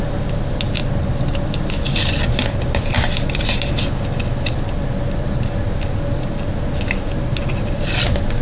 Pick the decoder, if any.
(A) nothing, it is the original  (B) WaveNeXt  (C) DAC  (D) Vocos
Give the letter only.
A